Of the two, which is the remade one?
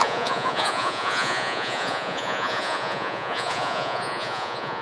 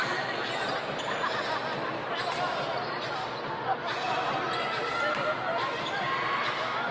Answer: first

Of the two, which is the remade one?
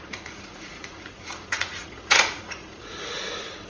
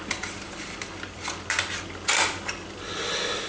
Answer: first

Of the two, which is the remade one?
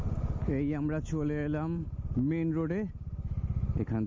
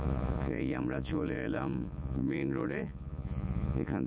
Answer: second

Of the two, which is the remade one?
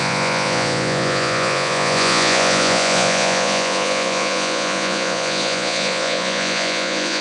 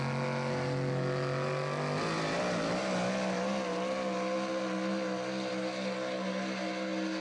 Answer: first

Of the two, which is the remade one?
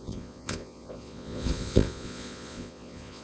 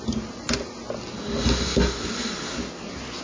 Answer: first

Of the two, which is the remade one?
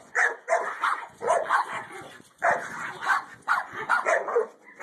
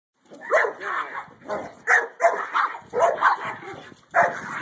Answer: first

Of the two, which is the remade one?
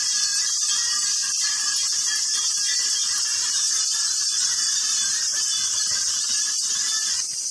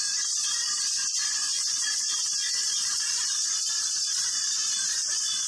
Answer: second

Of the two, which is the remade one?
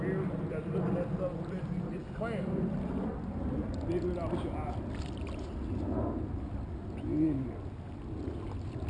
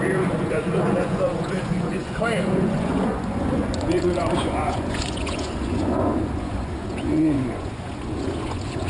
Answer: second